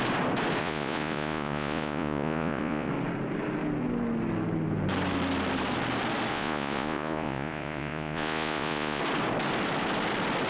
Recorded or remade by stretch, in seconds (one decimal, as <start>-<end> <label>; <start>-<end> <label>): 0.0-0.6 recorded; 0.6-2.9 remade; 2.9-6.3 recorded; 6.3-9.0 remade; 9.0-10.5 recorded